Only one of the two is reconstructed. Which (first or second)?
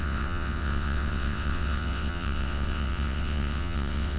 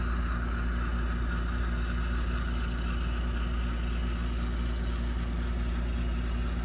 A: first